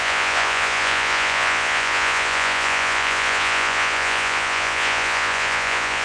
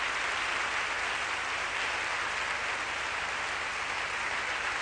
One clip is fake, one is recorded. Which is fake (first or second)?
first